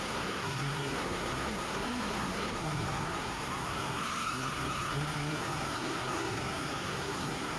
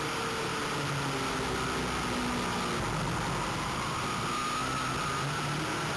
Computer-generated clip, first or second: first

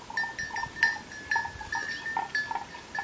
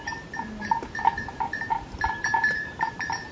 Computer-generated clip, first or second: second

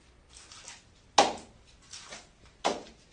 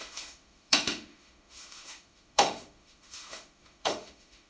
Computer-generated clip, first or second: second